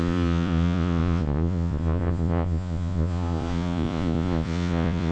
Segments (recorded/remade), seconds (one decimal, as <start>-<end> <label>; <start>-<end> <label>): 0.0-5.1 remade